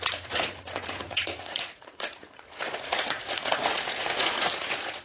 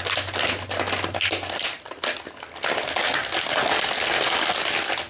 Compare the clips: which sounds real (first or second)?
second